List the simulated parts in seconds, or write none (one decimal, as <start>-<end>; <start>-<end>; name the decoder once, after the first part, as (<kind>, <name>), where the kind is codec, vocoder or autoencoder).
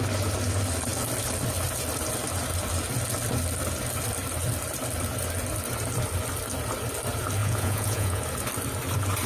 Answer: 7.4-8.2 (vocoder, Vocos)